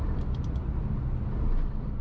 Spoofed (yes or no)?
no